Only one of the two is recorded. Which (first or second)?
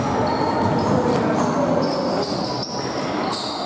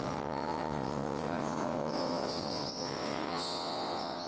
first